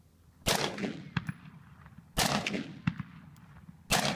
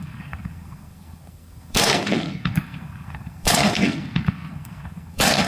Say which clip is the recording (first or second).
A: first